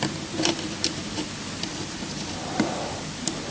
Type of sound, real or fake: real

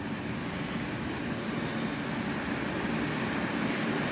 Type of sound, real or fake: real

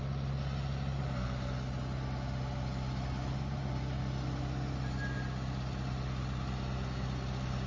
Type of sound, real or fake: real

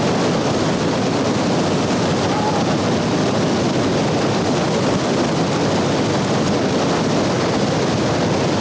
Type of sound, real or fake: real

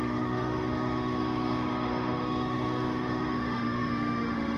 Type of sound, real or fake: fake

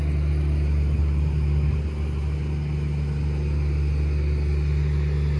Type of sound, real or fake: real